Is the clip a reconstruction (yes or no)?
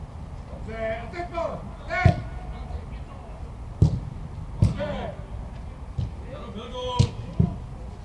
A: no